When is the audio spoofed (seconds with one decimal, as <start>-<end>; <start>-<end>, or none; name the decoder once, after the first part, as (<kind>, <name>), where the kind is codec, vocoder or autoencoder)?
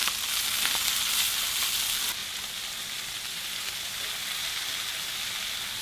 2.2-3.9 (vocoder, BigVGAN v2)